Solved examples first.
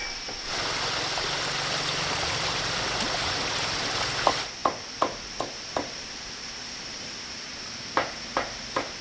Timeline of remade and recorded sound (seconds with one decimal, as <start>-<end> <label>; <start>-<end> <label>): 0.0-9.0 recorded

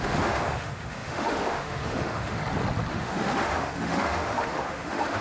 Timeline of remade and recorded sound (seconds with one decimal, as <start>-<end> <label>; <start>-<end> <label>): 0.0-2.4 remade; 2.4-2.9 recorded; 2.9-5.2 remade

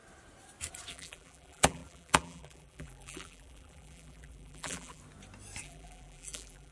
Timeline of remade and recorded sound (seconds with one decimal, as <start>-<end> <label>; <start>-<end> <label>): 0.0-0.9 recorded; 0.9-5.0 remade; 5.0-5.6 recorded; 5.6-6.7 remade